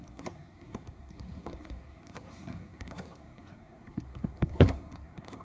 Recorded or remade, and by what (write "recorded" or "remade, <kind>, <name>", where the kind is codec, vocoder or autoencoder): remade, codec, SNAC